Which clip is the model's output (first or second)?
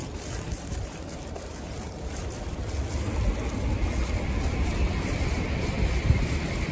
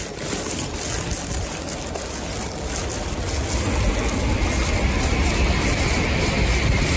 first